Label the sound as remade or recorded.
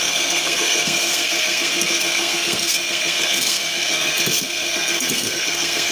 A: remade